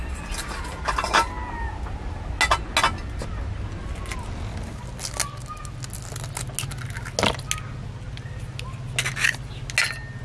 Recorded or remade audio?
recorded